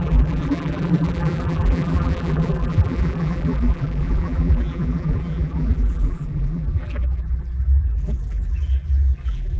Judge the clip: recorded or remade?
remade